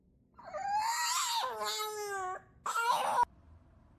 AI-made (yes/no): no